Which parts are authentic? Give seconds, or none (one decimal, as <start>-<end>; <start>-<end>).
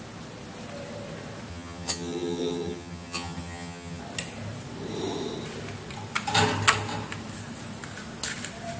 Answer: 0.0-1.5; 4.0-8.8